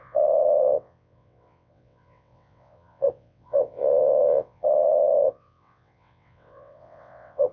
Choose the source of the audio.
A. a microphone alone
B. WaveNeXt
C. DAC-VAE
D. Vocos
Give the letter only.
B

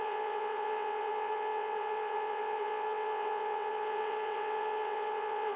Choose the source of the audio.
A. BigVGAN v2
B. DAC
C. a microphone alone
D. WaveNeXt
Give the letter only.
D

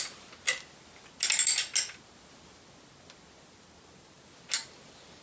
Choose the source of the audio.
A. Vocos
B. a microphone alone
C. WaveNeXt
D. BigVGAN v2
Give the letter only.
B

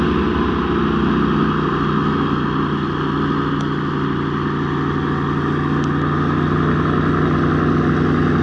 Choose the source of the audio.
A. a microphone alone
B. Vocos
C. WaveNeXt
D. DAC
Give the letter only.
A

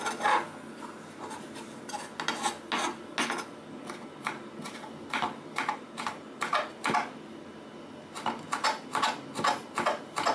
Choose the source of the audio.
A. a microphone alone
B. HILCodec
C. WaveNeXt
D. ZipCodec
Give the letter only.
A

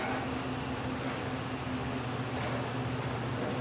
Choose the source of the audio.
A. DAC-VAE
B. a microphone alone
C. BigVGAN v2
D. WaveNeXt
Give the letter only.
B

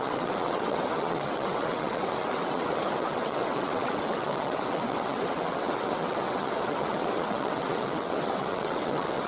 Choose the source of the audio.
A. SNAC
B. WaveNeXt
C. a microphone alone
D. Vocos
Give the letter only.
B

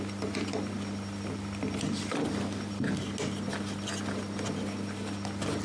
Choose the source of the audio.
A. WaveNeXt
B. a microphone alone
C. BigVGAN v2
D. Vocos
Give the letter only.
B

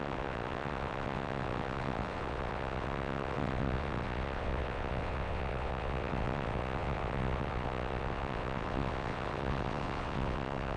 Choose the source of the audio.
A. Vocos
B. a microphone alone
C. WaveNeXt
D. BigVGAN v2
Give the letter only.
C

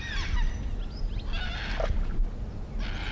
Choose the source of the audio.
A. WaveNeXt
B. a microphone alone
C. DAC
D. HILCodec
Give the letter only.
B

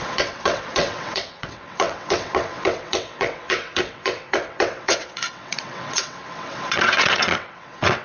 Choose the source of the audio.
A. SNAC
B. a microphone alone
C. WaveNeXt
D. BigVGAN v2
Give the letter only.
C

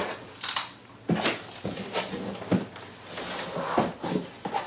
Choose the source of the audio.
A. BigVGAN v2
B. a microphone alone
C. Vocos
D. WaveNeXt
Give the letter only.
B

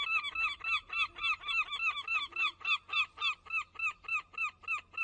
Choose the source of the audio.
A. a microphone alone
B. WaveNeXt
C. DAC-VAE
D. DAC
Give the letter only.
A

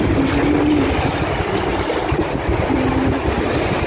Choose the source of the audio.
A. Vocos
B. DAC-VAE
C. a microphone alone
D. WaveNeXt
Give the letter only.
C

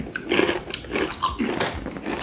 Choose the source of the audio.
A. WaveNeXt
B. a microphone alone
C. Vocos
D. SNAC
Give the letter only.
B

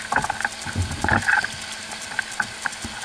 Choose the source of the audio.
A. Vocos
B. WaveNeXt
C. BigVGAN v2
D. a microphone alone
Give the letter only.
D